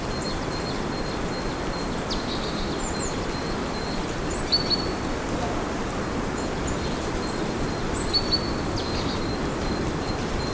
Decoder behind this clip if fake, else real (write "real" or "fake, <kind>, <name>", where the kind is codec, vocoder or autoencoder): real